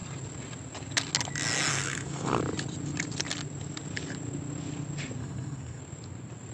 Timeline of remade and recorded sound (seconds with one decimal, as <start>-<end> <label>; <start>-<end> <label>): 0.0-1.7 recorded; 1.7-2.4 remade; 2.4-5.2 recorded; 5.2-5.8 remade; 5.8-6.5 recorded